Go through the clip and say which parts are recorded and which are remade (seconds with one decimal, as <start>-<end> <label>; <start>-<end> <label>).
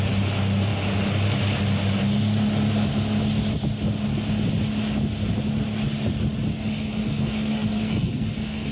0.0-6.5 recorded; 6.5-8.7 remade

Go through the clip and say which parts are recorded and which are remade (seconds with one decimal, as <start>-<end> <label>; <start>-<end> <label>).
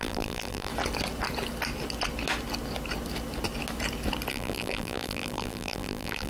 0.0-0.7 remade; 0.7-4.3 recorded; 4.3-6.3 remade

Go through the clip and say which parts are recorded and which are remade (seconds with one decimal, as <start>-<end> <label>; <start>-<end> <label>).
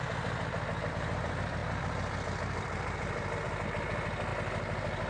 0.0-0.9 recorded; 0.9-4.3 remade; 4.3-5.1 recorded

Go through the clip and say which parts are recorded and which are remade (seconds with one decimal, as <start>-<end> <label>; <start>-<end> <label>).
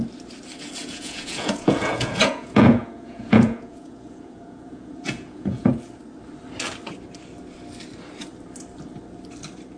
0.0-0.8 recorded; 0.8-5.7 remade; 5.7-9.8 recorded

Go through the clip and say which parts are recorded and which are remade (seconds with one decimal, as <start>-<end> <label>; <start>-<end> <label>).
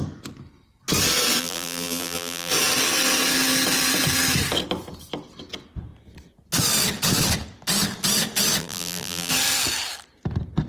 0.0-1.4 recorded; 1.4-2.5 remade; 2.5-8.6 recorded; 8.6-9.3 remade; 9.3-10.7 recorded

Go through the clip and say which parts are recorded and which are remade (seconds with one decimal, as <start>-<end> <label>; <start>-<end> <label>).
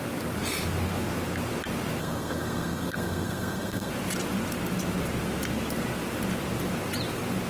0.0-2.0 recorded; 2.0-3.9 remade; 3.9-7.5 recorded